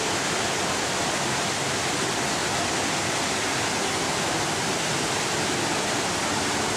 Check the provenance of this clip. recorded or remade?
recorded